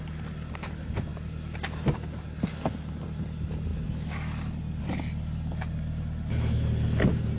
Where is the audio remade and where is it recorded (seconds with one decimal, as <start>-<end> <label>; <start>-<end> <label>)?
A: 0.0-7.4 recorded